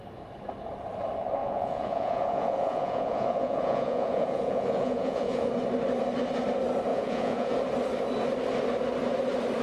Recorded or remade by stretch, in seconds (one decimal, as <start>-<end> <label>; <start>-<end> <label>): 0.0-1.4 recorded; 1.4-5.5 remade; 5.5-6.9 recorded; 6.9-7.5 remade; 7.5-9.6 recorded